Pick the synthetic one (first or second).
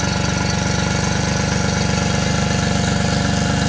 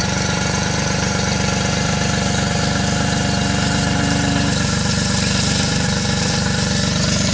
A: second